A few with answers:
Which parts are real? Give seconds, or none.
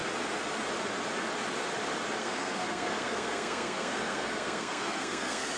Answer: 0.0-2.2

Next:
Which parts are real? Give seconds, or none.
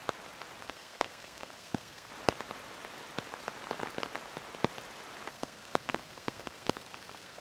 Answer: 0.0-0.6; 2.1-5.3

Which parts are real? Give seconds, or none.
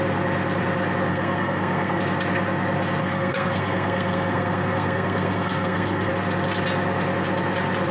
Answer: 0.0-1.1; 2.0-3.0; 6.1-7.9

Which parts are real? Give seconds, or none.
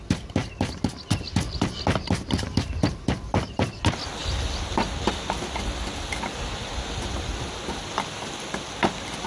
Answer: 0.0-9.3